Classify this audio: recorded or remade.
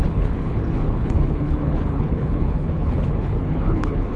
remade